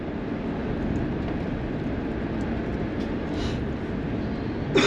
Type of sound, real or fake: real